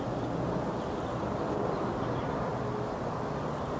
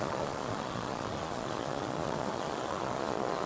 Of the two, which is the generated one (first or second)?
second